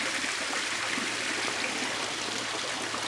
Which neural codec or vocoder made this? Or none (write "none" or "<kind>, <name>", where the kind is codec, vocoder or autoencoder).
none